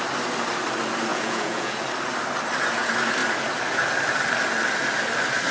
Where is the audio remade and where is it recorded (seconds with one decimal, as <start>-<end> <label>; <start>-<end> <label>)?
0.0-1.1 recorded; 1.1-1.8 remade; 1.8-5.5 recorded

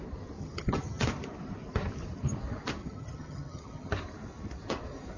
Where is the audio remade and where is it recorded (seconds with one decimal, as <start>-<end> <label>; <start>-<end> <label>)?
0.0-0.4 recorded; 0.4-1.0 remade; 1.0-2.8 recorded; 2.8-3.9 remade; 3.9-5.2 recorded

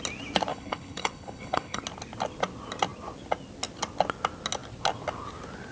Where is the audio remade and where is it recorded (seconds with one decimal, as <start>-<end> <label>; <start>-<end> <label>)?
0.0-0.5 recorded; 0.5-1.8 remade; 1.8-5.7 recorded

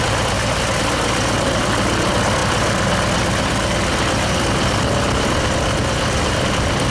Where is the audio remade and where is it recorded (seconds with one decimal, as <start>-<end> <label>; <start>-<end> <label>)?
0.0-6.9 recorded

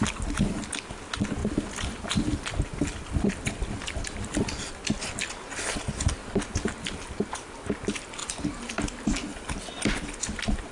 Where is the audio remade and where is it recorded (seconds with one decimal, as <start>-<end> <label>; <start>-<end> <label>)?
0.0-1.4 recorded; 1.4-4.7 remade; 4.7-6.2 recorded; 6.2-7.1 remade; 7.1-10.7 recorded

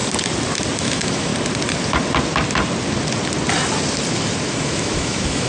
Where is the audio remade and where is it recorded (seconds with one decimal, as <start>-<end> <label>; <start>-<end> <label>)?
0.0-0.8 recorded; 0.8-1.3 remade; 1.3-4.6 recorded; 4.6-5.5 remade

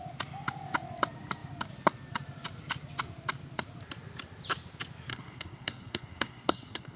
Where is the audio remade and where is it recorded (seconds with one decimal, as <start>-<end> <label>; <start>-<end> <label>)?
0.0-5.1 recorded; 5.1-7.0 remade

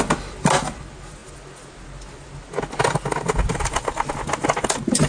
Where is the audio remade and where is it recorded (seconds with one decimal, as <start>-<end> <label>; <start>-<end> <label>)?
0.0-5.1 recorded